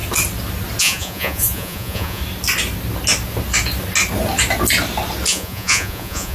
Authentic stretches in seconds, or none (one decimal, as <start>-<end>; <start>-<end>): 0.0-0.8; 2.2-5.3